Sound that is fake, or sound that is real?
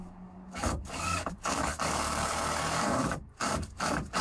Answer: fake